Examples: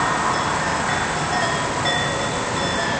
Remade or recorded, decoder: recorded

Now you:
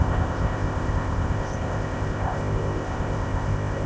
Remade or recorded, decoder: remade, codec, ZipCodec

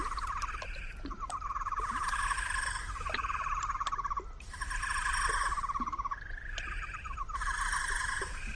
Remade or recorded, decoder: recorded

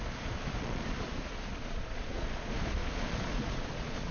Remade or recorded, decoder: remade, vocoder, Vocos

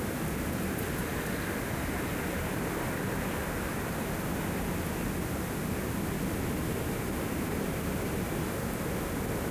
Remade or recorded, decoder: recorded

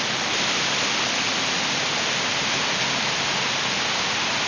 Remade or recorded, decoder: recorded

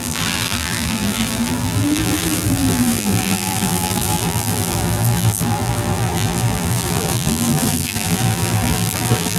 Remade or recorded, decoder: remade, vocoder, BigVGAN v2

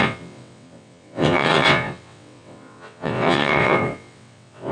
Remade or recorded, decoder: remade, vocoder, WaveNeXt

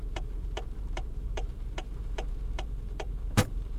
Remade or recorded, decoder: remade, vocoder, BigVGAN v2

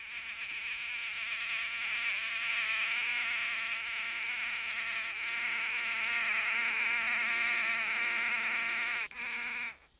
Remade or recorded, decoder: recorded